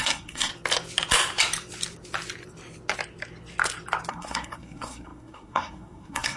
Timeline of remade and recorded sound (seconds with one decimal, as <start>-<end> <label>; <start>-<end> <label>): 0.0-0.5 remade; 0.5-4.1 recorded; 4.1-6.4 remade